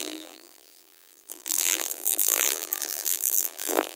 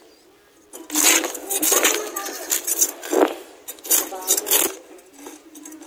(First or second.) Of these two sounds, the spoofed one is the first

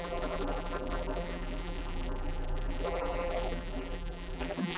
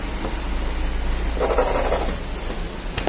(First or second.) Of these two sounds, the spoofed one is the first